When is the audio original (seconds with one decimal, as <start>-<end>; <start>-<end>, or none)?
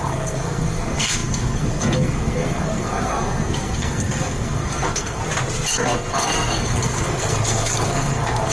5.2-5.7